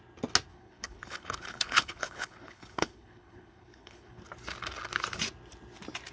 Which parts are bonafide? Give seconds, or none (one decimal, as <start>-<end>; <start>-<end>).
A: 0.0-0.5; 4.2-6.1